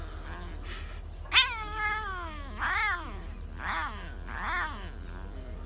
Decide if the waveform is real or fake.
real